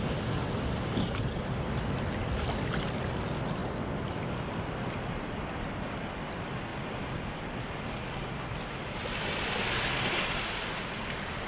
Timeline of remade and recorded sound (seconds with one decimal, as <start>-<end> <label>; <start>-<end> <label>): 0.0-2.2 recorded; 2.2-3.2 remade; 3.2-11.5 recorded